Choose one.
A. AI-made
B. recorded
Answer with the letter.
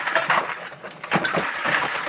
A